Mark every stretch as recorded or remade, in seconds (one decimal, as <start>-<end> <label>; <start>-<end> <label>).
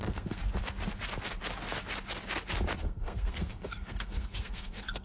0.0-0.4 remade; 0.4-2.8 recorded; 2.8-5.0 remade